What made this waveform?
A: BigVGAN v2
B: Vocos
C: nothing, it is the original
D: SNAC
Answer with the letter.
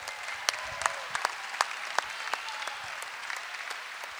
C